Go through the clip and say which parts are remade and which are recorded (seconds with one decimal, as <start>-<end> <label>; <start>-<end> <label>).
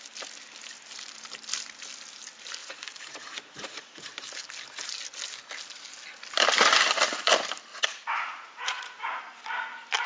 0.0-2.6 recorded; 2.6-4.1 remade; 4.1-7.7 recorded; 7.7-9.2 remade; 9.2-10.1 recorded